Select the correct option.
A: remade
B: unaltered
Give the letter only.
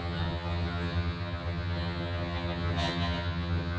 A